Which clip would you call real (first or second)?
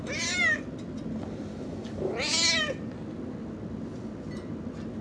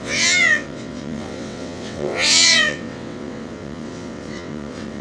first